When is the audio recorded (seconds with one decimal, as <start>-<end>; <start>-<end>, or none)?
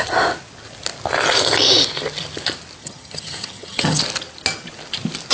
0.0-2.8; 4.0-5.3